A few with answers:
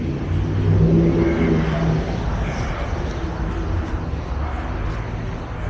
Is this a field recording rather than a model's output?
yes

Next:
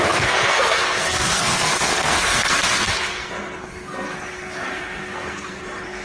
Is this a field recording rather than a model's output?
no